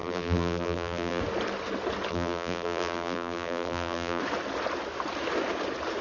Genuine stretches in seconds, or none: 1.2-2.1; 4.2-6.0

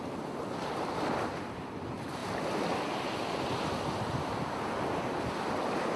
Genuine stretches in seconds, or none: 0.0-6.0

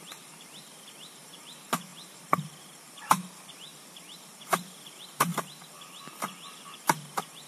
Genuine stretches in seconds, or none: 5.3-6.5

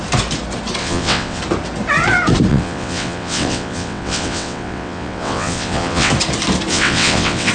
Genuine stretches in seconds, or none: 0.0-0.8; 1.4-2.5; 6.1-6.7